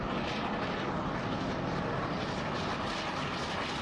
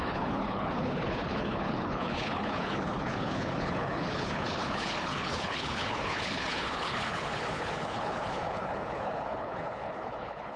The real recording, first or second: first